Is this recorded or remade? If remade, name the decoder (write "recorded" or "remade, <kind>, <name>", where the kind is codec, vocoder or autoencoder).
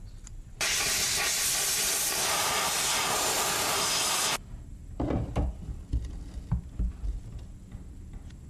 recorded